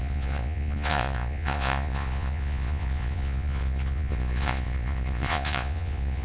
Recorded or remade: remade